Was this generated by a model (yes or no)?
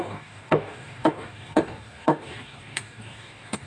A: yes